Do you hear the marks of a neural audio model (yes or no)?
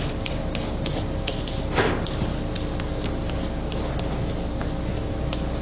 no